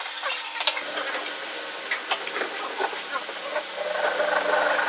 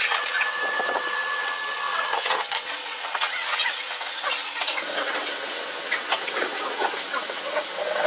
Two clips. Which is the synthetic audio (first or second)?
second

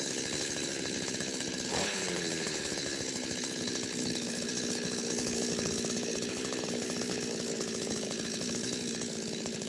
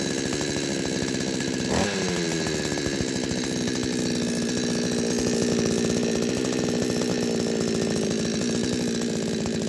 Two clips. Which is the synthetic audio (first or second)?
first